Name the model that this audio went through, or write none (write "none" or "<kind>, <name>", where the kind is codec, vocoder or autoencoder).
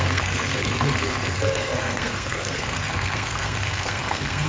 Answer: codec, SNAC